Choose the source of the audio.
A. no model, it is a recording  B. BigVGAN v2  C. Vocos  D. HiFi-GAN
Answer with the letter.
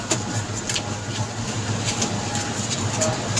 A